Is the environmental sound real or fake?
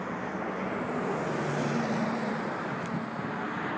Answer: real